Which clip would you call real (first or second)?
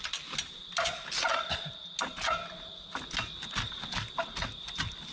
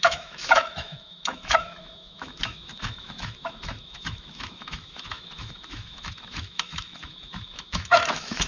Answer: first